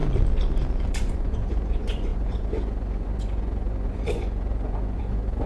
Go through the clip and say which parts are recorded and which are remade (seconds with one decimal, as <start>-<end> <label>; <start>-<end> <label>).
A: 0.0-0.9 recorded; 0.9-5.5 remade